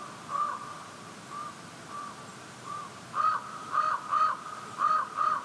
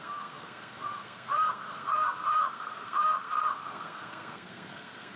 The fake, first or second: second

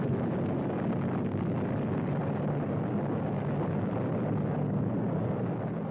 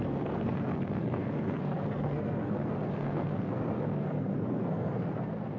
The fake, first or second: second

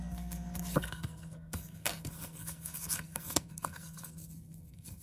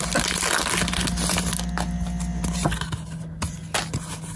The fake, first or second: first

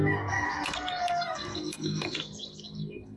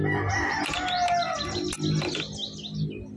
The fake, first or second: first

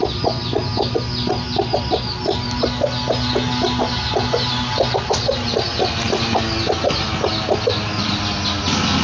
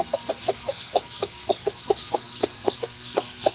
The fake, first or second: second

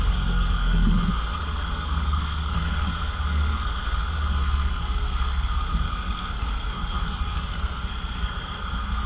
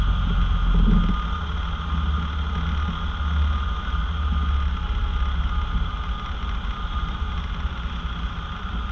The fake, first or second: first